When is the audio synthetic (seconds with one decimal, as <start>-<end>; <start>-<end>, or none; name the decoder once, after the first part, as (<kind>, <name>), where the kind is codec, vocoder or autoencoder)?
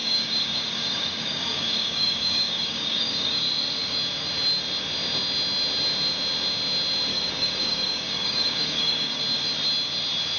0.0-3.4 (codec, DAC); 7.1-9.2